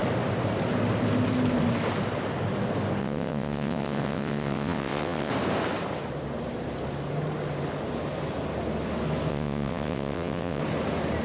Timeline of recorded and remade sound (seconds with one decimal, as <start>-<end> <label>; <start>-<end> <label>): 0.0-3.0 recorded; 3.0-5.3 remade; 5.3-9.3 recorded; 9.3-10.6 remade; 10.6-11.2 recorded